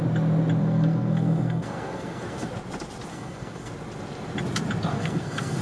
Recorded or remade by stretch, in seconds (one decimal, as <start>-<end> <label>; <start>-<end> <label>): 0.0-0.6 recorded; 0.6-2.5 remade; 2.5-3.1 recorded; 3.1-3.7 remade; 3.7-4.9 recorded; 4.9-5.6 remade